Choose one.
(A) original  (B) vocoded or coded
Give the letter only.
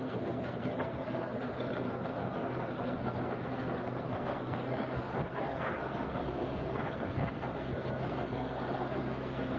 B